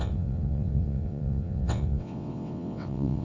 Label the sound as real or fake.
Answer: fake